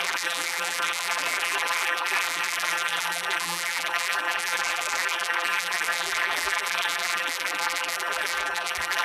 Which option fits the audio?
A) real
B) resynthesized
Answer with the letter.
B